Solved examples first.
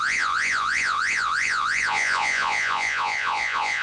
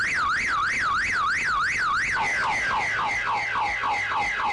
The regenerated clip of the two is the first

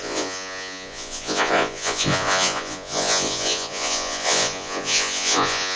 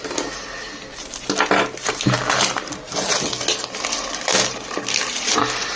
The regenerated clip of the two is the first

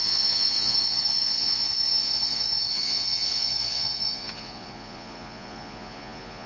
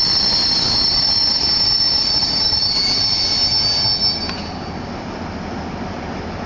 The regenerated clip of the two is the first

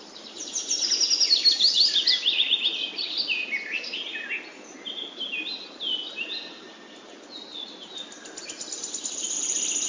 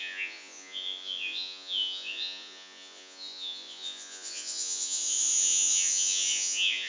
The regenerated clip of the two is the second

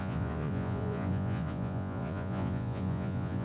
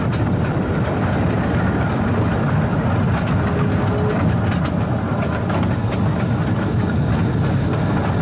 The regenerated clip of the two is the first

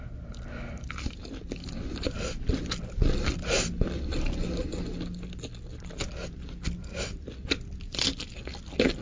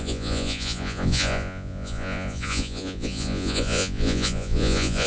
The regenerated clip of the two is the second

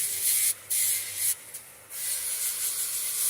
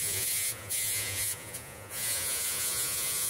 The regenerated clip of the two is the second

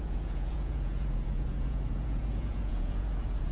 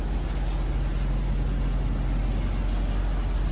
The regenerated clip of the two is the first